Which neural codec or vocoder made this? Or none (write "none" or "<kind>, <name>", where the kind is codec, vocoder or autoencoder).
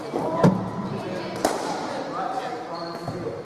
none